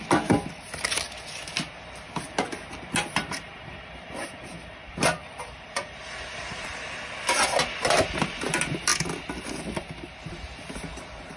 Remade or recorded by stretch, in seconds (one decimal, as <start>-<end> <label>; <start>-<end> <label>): 0.0-3.2 recorded; 3.2-6.7 remade; 6.7-11.4 recorded